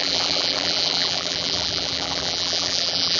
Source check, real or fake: fake